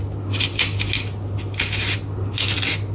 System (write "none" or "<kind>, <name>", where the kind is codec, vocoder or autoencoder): none